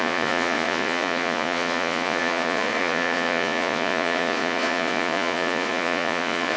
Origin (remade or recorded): remade